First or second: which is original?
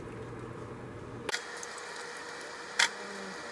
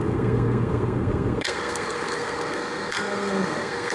first